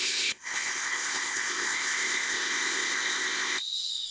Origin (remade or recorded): remade